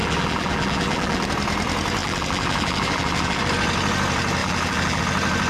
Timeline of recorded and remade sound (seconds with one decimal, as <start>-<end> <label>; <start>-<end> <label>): 0.0-1.3 remade; 1.3-2.0 recorded; 2.0-3.4 remade; 3.4-4.4 recorded; 4.4-5.0 remade; 5.0-5.5 recorded